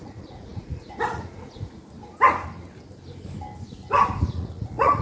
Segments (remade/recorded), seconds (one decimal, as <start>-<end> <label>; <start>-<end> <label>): 0.0-1.8 remade; 1.8-4.3 recorded; 4.3-5.0 remade